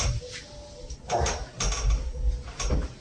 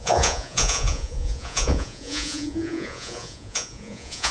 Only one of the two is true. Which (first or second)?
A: first